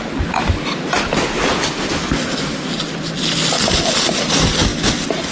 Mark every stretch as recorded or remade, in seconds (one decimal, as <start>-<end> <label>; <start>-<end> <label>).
0.0-5.3 recorded